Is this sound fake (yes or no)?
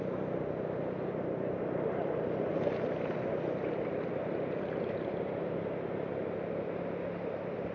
no